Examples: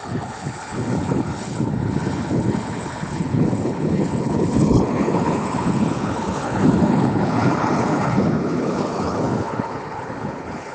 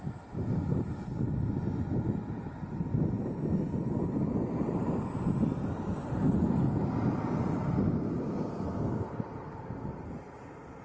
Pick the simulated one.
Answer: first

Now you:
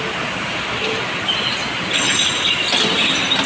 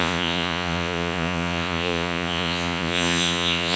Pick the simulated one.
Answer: second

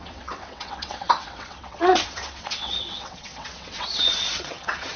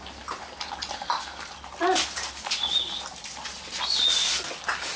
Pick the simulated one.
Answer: first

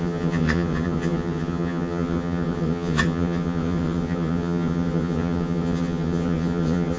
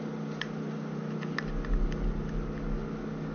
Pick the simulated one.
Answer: first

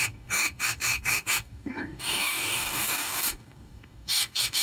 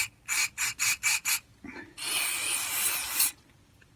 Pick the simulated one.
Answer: first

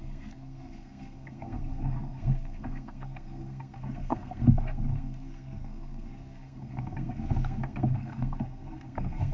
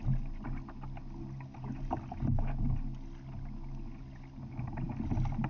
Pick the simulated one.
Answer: first